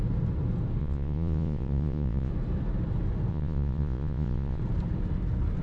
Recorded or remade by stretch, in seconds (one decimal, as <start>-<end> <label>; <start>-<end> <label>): 0.0-0.8 recorded; 0.8-2.3 remade; 2.3-3.3 recorded; 3.3-4.6 remade; 4.6-5.6 recorded